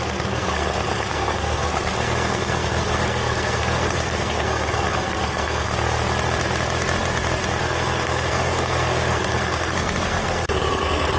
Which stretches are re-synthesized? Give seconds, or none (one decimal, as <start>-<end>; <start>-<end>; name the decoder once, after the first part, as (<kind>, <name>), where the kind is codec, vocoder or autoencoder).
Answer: 0.0-5.7 (codec, SNAC); 7.6-11.2